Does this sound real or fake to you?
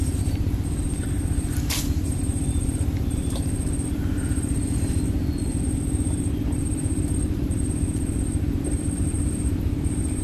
fake